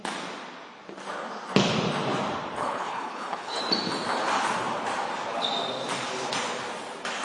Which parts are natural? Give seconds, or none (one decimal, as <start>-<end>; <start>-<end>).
0.0-2.6; 3.6-7.2